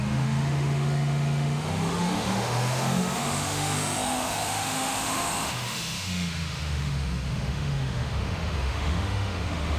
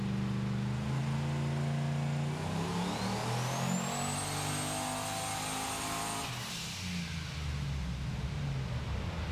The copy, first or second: first